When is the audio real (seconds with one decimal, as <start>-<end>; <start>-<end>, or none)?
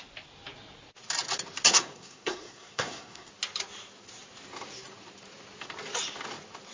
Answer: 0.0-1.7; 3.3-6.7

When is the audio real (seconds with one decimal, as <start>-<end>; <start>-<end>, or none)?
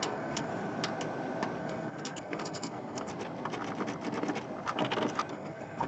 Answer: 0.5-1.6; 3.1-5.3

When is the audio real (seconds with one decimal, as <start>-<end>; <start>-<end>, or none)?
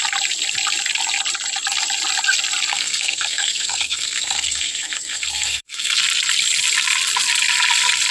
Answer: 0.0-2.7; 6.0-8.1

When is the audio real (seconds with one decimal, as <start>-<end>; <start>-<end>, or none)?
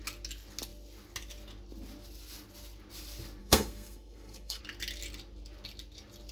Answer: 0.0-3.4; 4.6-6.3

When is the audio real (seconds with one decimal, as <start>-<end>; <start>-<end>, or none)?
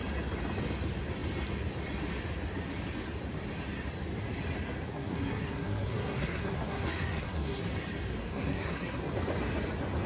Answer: 0.0-4.9; 7.6-8.2; 9.0-10.1